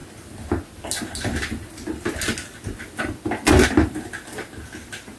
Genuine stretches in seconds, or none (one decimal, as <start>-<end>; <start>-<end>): 0.0-5.2